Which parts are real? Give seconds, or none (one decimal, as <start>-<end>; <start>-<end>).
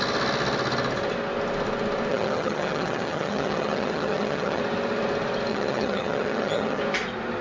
0.0-2.1; 4.6-5.5; 6.8-7.4